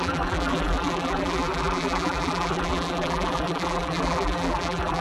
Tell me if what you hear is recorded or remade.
remade